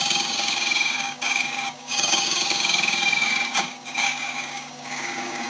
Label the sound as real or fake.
fake